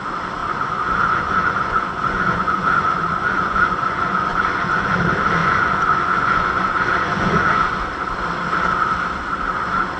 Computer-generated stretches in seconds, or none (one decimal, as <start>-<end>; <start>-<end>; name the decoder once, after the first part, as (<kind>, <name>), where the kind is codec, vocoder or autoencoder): 0.4-5.0 (vocoder, Vocos); 5.4-7.9